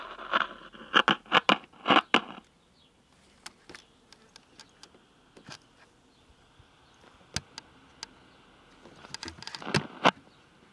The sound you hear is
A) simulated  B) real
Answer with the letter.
B